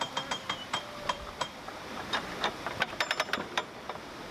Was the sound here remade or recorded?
remade